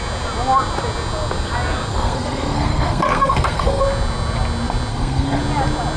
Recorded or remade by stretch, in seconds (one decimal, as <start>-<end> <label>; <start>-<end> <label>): 0.0-1.9 recorded; 1.9-3.8 remade; 3.8-4.9 recorded; 4.9-5.4 remade; 5.4-6.0 recorded